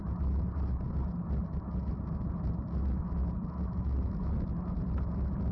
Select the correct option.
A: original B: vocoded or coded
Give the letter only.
A